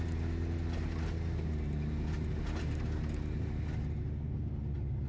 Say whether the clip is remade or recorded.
recorded